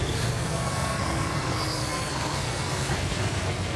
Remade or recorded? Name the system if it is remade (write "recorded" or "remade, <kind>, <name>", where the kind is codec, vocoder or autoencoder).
remade, codec, SNAC